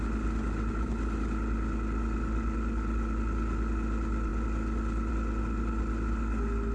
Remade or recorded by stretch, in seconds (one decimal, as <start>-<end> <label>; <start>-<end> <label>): 0.0-6.7 recorded